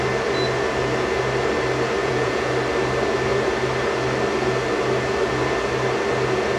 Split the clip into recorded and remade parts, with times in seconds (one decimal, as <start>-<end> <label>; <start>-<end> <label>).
0.0-2.0 recorded; 2.0-2.5 remade; 2.5-6.6 recorded

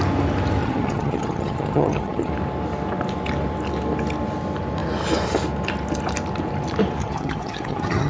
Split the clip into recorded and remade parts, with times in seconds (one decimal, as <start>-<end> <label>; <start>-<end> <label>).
0.0-0.6 recorded; 0.6-2.3 remade; 2.3-7.0 recorded; 7.0-8.1 remade

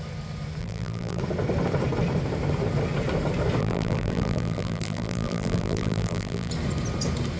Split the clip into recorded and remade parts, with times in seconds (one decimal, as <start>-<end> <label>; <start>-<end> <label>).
0.0-0.6 recorded; 0.6-1.2 remade; 1.2-3.6 recorded; 3.6-6.5 remade; 6.5-7.4 recorded

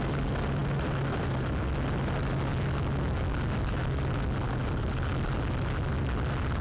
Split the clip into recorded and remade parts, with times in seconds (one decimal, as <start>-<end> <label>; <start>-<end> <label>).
0.0-6.6 recorded